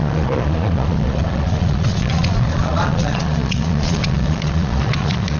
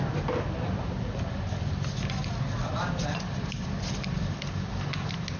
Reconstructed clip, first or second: first